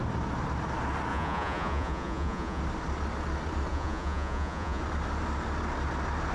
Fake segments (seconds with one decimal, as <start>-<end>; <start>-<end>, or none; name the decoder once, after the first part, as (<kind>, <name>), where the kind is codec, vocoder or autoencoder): 1.1-2.6 (vocoder, Vocos); 3.7-4.8